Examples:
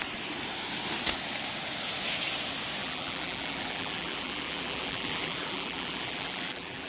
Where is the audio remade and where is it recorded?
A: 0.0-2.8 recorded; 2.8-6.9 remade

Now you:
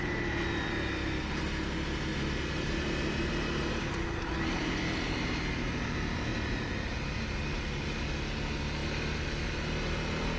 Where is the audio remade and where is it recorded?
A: 0.0-2.1 recorded; 2.1-3.9 remade; 3.9-4.6 recorded; 4.6-5.3 remade; 5.3-6.3 recorded; 6.3-7.2 remade; 7.2-10.4 recorded

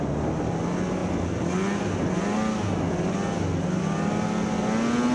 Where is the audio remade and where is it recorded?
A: 0.0-5.1 recorded

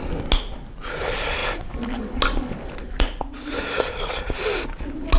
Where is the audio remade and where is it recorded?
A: 0.0-5.2 recorded

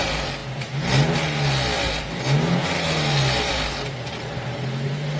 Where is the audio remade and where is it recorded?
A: 0.0-0.4 remade; 0.4-3.5 recorded; 3.5-5.2 remade

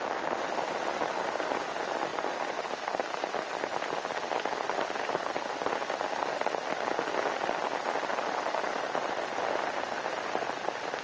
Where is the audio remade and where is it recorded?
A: 0.0-11.0 remade